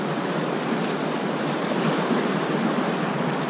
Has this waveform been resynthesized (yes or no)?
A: no